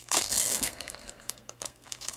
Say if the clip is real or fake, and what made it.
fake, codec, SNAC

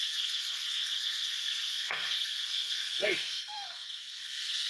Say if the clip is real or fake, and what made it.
fake, codec, SNAC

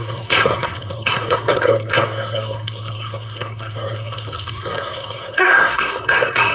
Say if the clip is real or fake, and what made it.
fake, codec, SNAC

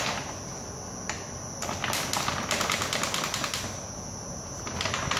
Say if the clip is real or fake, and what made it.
real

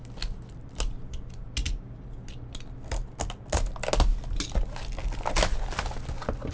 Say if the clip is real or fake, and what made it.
real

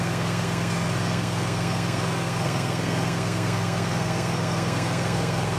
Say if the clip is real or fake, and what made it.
fake, codec, SNAC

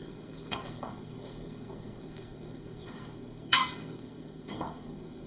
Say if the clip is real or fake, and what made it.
fake, codec, SNAC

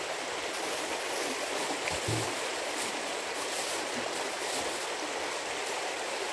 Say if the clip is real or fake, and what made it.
real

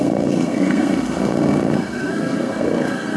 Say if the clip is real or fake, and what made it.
fake, codec, SNAC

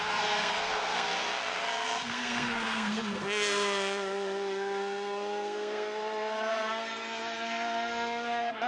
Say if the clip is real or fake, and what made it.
fake, codec, SNAC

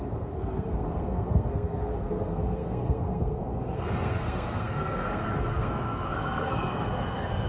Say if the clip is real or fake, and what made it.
fake, codec, SNAC